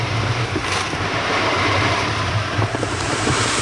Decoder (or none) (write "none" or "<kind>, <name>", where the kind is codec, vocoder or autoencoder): vocoder, BigVGAN v2